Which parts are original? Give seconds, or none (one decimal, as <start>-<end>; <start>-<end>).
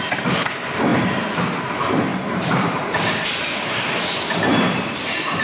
0.0-2.1